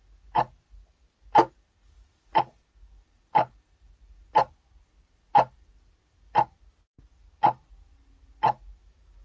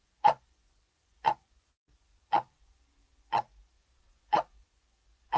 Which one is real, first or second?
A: first